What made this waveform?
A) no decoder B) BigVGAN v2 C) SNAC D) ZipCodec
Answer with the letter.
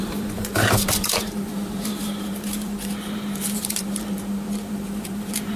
B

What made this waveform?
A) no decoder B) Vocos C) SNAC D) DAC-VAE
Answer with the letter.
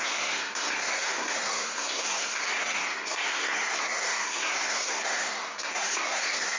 C